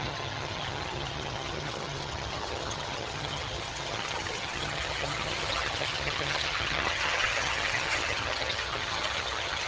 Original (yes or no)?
no